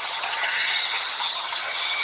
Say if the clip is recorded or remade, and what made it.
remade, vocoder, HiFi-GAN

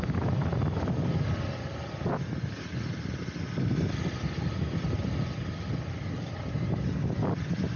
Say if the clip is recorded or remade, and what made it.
recorded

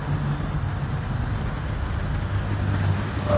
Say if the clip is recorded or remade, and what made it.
recorded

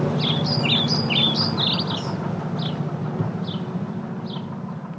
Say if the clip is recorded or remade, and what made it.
recorded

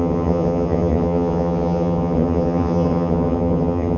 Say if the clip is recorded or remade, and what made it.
remade, vocoder, HiFi-GAN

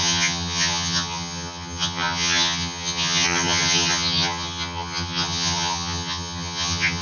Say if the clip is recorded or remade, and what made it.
remade, vocoder, HiFi-GAN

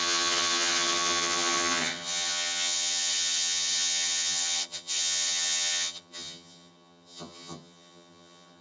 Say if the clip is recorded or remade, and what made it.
remade, vocoder, HiFi-GAN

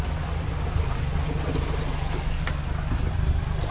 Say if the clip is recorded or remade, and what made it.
recorded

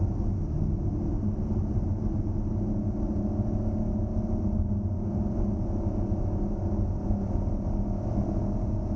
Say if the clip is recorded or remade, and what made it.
recorded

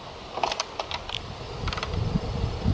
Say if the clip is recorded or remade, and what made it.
recorded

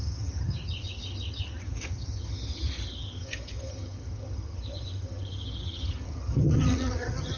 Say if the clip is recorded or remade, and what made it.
remade, vocoder, HiFi-GAN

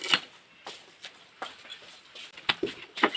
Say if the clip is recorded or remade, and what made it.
recorded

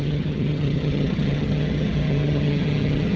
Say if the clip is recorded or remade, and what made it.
remade, vocoder, HiFi-GAN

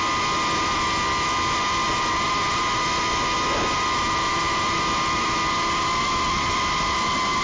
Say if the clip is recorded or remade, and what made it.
recorded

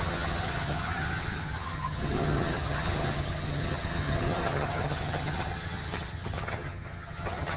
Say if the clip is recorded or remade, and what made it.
remade, vocoder, HiFi-GAN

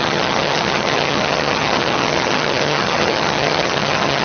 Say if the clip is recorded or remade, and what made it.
remade, vocoder, HiFi-GAN